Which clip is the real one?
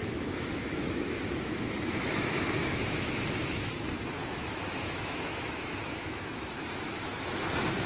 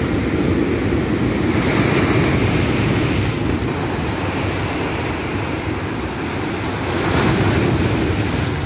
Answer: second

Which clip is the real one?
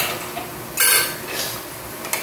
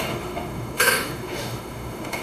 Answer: first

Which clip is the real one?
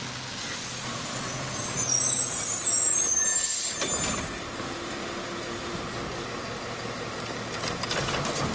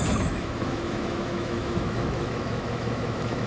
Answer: first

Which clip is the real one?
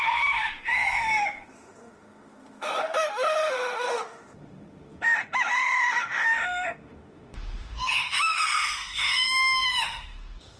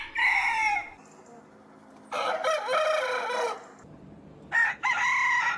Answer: second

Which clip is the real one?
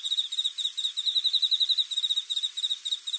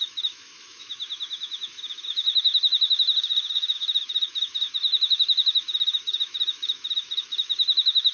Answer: first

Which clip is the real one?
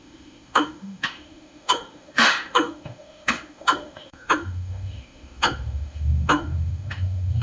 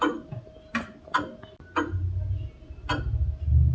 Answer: second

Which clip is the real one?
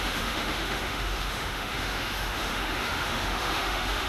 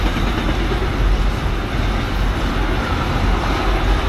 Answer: second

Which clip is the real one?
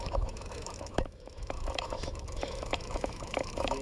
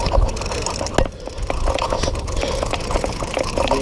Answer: second